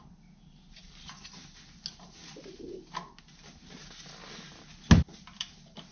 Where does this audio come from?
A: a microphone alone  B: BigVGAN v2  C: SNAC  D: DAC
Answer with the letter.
A